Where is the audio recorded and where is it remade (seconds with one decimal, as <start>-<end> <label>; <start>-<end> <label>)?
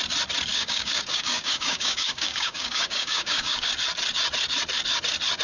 0.0-0.5 recorded; 0.5-3.7 remade; 3.7-5.4 recorded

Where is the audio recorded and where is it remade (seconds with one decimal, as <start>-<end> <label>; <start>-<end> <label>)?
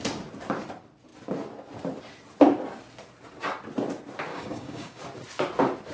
0.0-4.3 recorded; 4.3-5.0 remade; 5.0-5.9 recorded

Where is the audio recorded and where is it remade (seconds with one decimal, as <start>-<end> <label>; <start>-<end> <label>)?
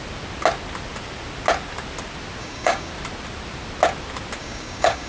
0.0-2.4 recorded; 2.4-2.9 remade; 2.9-4.4 recorded; 4.4-5.1 remade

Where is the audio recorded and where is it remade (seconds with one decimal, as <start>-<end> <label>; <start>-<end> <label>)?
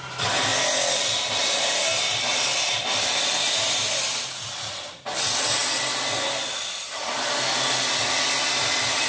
0.0-9.1 recorded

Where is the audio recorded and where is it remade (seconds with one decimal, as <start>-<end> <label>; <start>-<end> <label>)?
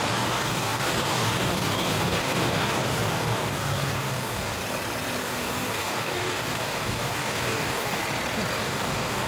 0.0-4.6 remade; 4.6-5.2 recorded; 5.2-8.0 remade; 8.0-8.6 recorded; 8.6-9.3 remade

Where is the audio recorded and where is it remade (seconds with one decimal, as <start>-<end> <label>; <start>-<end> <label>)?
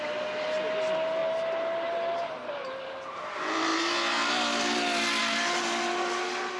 0.0-6.6 recorded